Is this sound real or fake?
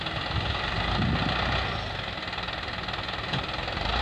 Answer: real